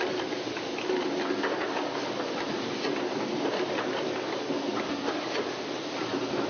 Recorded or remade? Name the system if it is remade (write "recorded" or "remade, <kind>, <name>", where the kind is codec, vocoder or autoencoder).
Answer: recorded